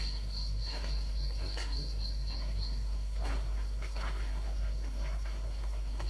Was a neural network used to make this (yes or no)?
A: yes